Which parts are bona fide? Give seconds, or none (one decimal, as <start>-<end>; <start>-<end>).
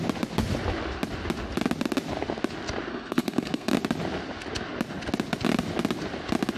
0.0-2.9; 3.7-6.6